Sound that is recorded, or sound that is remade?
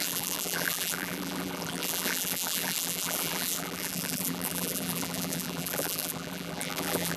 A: remade